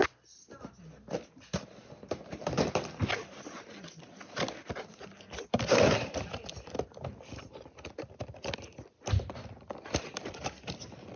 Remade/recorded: recorded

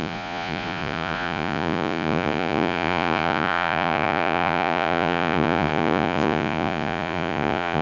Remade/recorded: remade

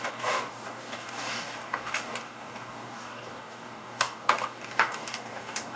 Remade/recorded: remade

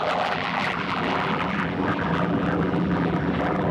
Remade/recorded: remade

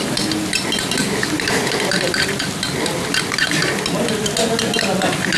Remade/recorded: recorded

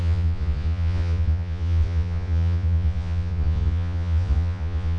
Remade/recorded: remade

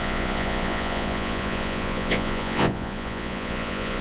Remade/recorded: remade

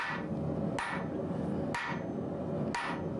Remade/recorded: recorded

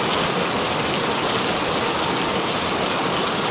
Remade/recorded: recorded